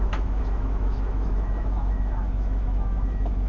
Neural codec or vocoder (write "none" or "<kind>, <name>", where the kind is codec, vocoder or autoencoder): autoencoder, DAC-VAE